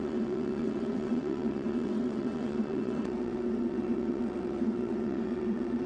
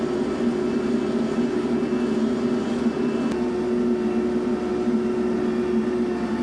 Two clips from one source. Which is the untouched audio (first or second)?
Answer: second